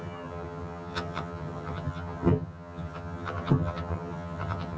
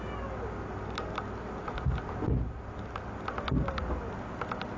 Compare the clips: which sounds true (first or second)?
second